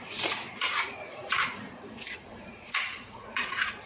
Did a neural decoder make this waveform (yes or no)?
yes